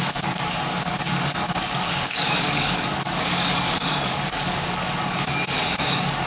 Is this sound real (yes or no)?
no